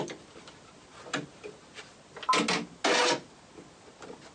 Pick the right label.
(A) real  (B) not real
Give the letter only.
A